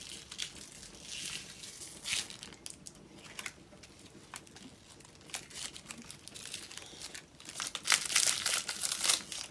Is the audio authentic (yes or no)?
yes